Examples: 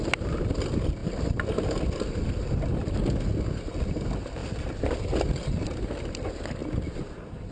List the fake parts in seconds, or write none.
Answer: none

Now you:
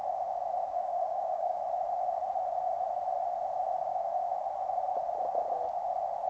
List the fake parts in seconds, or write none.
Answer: 0.7-1.6 (codec, DAC)

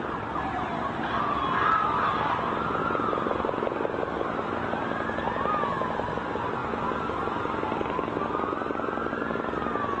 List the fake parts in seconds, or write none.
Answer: none

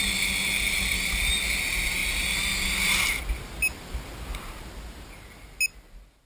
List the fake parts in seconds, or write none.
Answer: none

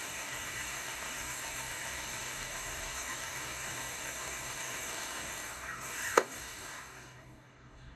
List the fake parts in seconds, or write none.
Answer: 0.0-8.0 (codec, DAC)